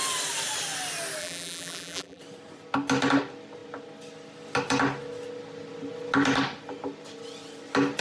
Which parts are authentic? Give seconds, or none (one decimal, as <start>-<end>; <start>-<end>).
0.0-1.2; 2.2-8.0